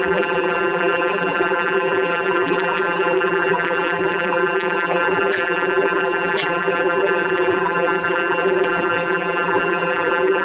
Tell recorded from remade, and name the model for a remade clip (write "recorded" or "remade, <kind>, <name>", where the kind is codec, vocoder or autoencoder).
remade, vocoder, BigVGAN v2